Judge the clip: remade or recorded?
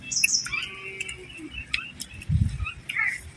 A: recorded